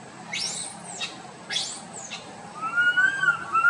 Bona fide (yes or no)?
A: yes